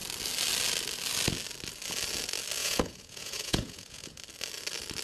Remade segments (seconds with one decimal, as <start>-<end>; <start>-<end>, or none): 2.6-4.2